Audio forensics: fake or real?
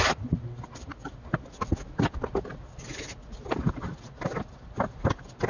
real